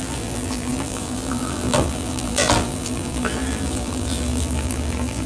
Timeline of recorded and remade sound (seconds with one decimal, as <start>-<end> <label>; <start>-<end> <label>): 0.0-5.3 remade